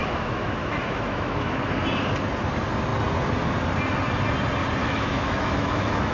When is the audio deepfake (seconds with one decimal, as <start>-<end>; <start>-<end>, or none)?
0.0-1.6; 4.8-6.1